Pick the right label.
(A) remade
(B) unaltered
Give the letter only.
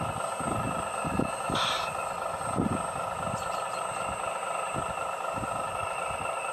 B